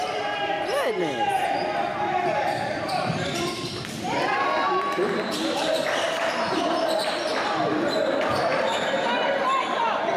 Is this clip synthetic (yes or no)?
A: yes